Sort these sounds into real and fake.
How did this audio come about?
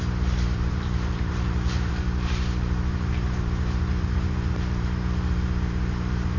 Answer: fake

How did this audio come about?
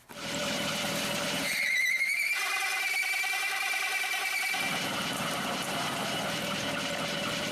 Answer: fake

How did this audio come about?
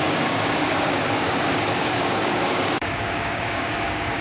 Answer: fake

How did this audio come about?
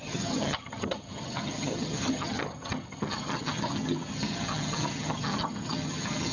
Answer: fake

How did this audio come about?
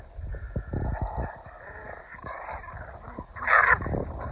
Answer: real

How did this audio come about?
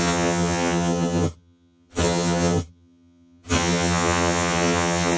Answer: fake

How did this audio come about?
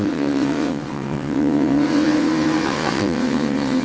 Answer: fake